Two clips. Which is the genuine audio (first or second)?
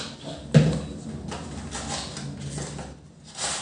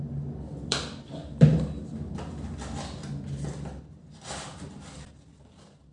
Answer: first